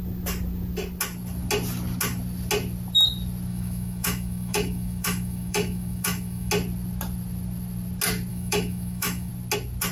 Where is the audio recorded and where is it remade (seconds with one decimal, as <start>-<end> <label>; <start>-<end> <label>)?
0.0-3.5 recorded; 3.5-6.5 remade; 6.5-8.3 recorded; 8.3-9.3 remade; 9.3-9.9 recorded